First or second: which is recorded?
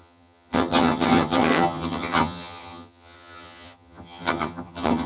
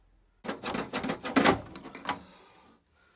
second